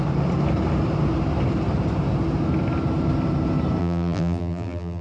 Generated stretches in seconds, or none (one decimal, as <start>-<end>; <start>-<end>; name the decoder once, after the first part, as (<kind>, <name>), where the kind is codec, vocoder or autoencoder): 3.8-5.0 (vocoder, BigVGAN v2)